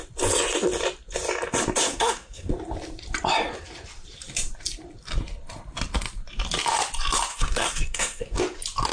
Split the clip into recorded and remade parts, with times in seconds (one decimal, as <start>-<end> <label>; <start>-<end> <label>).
0.0-1.9 recorded; 1.9-2.5 remade; 2.5-7.3 recorded; 7.3-8.4 remade; 8.4-8.9 recorded